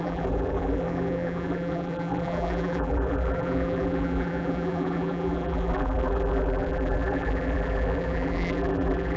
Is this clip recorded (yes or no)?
no